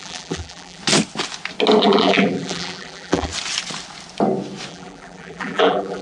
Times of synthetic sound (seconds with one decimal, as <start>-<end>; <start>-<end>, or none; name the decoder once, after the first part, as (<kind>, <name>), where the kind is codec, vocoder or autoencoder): 0.0-0.8 (vocoder, BigVGAN v2); 1.8-3.3; 4.7-6.0